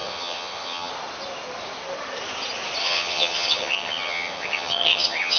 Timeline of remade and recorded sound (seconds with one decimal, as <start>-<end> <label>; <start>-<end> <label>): 0.0-0.9 remade; 0.9-2.8 recorded; 2.8-5.4 remade